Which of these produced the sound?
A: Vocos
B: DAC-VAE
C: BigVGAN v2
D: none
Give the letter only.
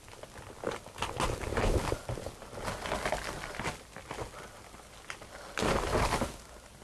D